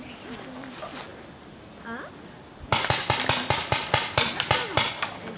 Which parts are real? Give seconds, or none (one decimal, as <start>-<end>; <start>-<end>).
0.0-5.4